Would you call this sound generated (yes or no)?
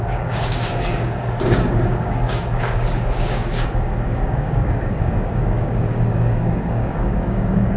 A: yes